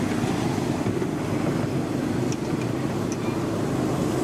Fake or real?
real